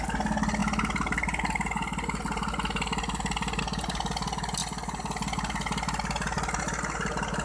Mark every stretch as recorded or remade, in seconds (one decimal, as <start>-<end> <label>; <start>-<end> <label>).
0.0-7.4 recorded